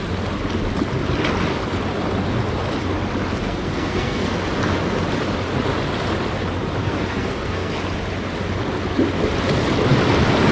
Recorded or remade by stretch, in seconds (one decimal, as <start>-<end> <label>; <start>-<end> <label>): 0.0-3.4 recorded; 3.4-4.3 remade; 4.3-6.8 recorded; 6.8-7.7 remade; 7.7-10.5 recorded

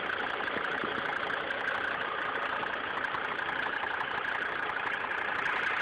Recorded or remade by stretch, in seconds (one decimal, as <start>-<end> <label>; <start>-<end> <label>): 0.0-5.8 recorded